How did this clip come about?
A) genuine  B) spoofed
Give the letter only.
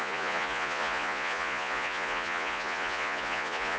B